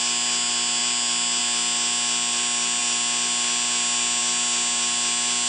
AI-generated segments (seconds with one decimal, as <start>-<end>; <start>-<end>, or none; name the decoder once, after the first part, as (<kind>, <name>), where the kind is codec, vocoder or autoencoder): none